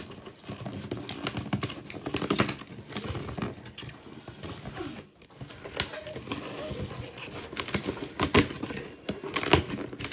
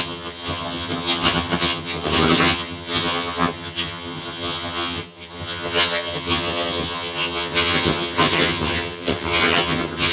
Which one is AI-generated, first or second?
second